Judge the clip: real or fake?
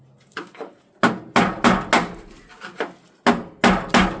real